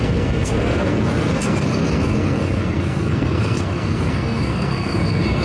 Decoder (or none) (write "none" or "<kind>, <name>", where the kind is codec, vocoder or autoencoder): codec, SNAC